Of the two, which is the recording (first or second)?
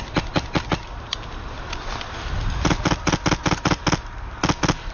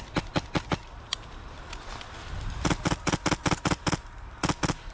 first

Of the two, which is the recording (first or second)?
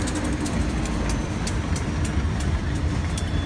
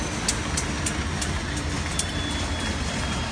second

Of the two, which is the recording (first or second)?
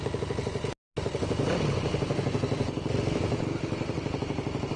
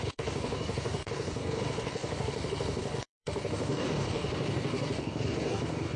first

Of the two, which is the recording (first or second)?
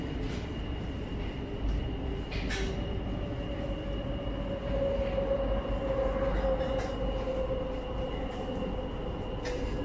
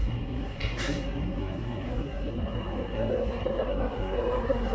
first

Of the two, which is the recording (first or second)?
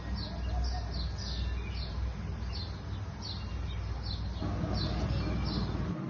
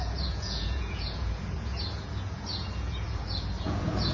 first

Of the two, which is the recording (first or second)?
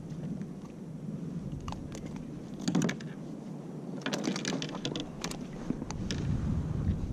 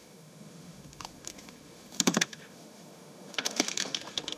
first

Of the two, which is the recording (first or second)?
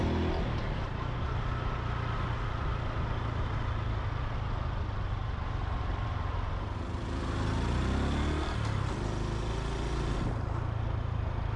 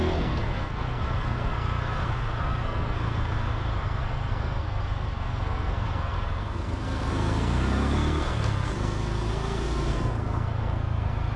first